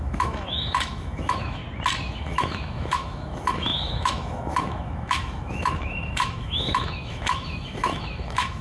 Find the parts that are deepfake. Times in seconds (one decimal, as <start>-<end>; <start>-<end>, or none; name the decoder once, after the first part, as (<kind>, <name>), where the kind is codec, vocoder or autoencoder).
0.0-1.6 (autoencoder, DAC-VAE); 2.2-8.6